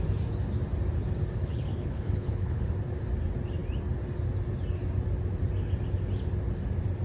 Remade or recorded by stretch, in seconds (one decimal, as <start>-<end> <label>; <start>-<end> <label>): 0.0-1.4 recorded; 1.4-2.7 remade; 2.7-7.0 recorded